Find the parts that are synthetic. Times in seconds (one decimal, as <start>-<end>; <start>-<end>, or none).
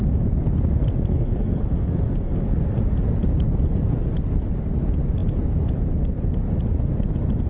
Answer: 1.1-2.4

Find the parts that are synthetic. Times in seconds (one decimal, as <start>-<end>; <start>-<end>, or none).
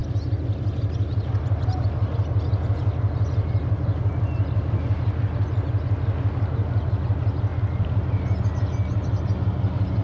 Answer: none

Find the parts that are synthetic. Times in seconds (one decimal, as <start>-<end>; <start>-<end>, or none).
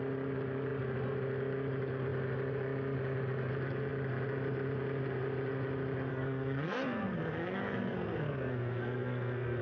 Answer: 6.1-9.6